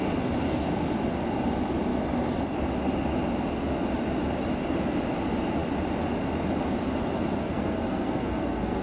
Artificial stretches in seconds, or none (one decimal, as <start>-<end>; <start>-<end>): 7.4-8.8